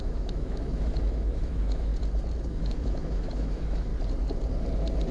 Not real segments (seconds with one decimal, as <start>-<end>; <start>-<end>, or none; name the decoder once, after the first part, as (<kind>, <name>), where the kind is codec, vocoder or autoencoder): 0.0-1.9 (autoencoder, DAC-VAE); 2.5-3.9